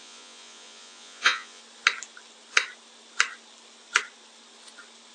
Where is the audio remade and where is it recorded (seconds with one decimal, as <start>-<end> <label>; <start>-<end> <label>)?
0.0-1.6 remade; 1.6-5.1 recorded